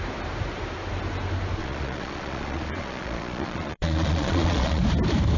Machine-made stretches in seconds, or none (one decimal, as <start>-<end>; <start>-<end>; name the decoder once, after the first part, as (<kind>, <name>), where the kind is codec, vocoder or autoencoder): 1.6-4.8 (vocoder, Vocos)